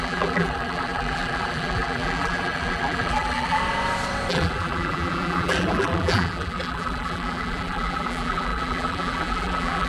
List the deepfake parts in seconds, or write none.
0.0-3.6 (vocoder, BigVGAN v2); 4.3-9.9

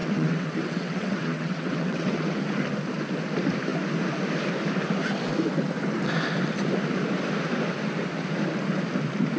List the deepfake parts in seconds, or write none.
0.0-2.3 (vocoder, WaveNeXt)

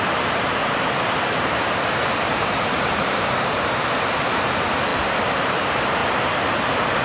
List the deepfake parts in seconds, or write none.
0.0-6.0 (vocoder, BigVGAN v2)

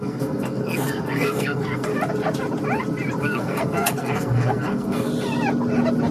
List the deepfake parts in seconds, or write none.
0.0-1.9 (codec, SNAC); 3.2-5.1

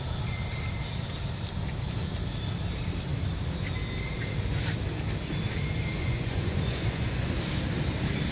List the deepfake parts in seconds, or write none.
6.0-7.4 (vocoder, Vocos)

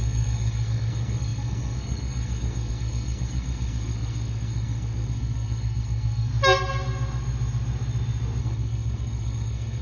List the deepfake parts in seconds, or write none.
0.0-6.3 (codec, SNAC); 8.4-9.8

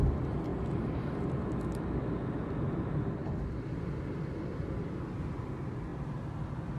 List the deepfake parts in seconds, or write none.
none

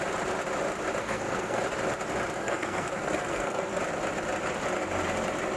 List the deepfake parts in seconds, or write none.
1.0-1.6 (codec, SNAC); 2.4-3.8